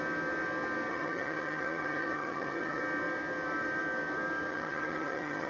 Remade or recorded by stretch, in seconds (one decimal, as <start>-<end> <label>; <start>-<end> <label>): 0.0-0.9 recorded; 0.9-2.8 remade; 2.8-4.5 recorded; 4.5-5.5 remade